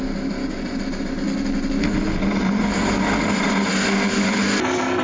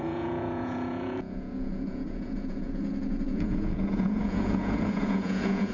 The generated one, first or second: second